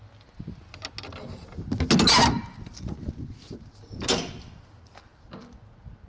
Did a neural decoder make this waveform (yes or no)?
no